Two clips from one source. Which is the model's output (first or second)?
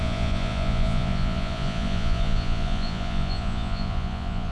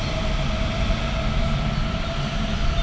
first